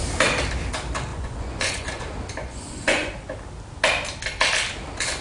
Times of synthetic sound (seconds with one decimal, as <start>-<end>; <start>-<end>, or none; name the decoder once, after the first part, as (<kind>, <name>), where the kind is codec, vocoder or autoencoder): 1.1-2.0 (vocoder, Vocos); 2.4-3.1